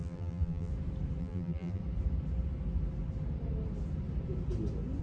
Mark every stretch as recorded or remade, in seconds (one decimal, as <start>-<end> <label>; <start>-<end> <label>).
0.0-0.7 remade; 0.7-1.2 recorded; 1.2-1.8 remade; 1.8-5.0 recorded